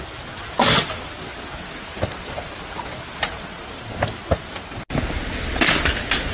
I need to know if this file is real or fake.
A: real